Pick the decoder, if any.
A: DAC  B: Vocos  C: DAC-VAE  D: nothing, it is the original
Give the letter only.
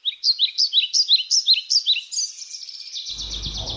D